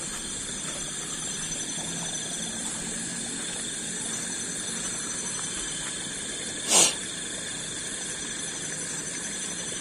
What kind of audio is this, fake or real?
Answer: real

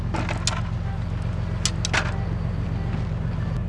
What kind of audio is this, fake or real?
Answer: real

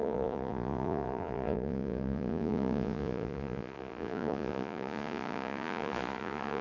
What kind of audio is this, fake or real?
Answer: fake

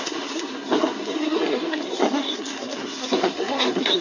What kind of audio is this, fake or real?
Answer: fake